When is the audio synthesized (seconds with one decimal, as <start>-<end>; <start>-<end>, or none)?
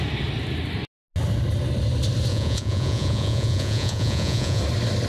2.3-4.6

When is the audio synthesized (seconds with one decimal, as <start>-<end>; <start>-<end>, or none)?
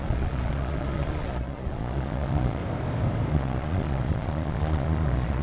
0.0-2.6; 3.3-5.4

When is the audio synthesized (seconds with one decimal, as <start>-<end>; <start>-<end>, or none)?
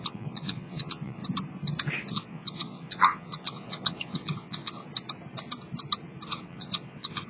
0.0-1.2; 2.1-4.8; 6.3-7.3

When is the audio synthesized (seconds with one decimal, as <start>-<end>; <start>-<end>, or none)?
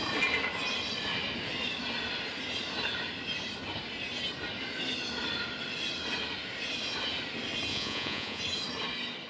7.7-8.4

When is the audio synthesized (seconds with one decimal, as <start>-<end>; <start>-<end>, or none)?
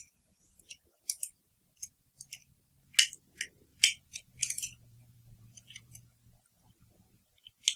3.7-6.0